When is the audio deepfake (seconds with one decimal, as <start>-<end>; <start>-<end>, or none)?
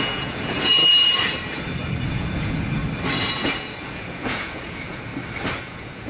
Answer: 0.0-0.8; 2.1-2.8; 3.3-5.1; 5.6-6.1